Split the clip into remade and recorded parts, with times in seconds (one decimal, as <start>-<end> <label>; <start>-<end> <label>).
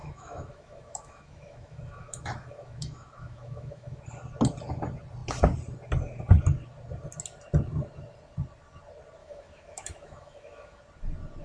0.0-4.0 remade; 4.0-9.2 recorded; 9.2-10.8 remade; 10.8-11.4 recorded